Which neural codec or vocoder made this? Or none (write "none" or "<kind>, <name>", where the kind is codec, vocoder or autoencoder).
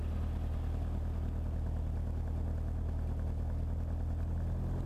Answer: none